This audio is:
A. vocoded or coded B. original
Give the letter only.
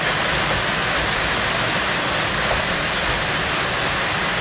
B